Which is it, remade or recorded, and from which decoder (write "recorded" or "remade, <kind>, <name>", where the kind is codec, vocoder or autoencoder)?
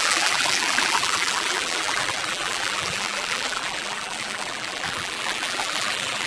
remade, vocoder, BigVGAN v2